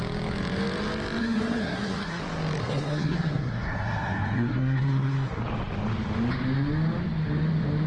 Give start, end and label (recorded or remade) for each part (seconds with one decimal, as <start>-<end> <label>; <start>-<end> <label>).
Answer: 0.0-1.2 recorded; 1.2-2.2 remade; 2.2-2.6 recorded; 2.6-5.4 remade; 5.4-7.9 recorded